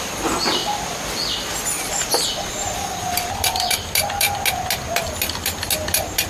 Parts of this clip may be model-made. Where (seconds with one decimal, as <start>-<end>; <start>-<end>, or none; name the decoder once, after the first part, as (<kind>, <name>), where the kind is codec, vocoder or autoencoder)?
none